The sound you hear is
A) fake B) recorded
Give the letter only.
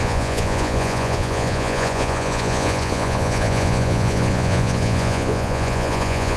A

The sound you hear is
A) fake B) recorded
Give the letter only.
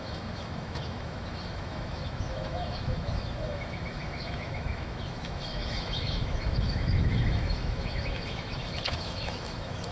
A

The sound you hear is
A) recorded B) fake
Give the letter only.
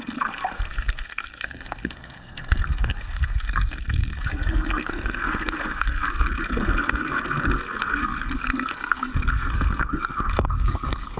B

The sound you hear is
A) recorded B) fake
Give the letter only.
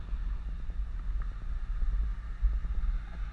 A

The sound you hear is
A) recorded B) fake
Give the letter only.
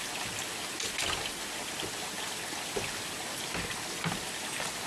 A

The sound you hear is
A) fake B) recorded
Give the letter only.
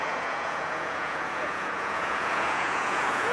A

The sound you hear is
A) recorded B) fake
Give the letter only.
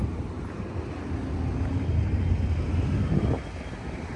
A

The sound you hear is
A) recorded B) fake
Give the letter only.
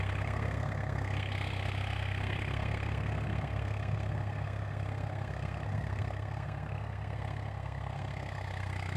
B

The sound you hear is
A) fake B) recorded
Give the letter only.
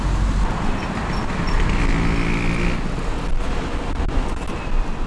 B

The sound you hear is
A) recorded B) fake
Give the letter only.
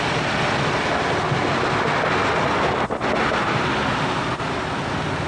A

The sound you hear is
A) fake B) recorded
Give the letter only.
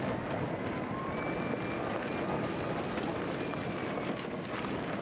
B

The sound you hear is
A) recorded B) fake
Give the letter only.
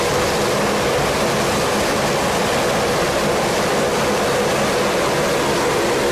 A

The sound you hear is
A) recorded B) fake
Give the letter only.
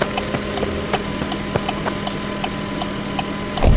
A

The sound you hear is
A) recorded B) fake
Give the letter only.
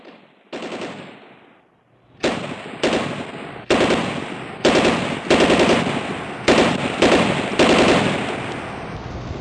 A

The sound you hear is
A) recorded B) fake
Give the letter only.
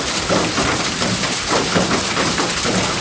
A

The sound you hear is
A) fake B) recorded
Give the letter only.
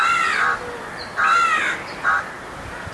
B